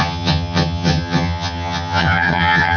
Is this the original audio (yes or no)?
no